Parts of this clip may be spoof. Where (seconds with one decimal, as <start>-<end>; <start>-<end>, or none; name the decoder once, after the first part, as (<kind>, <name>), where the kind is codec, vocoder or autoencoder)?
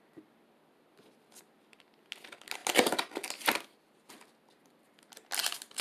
none